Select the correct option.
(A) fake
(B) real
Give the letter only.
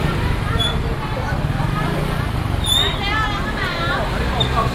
B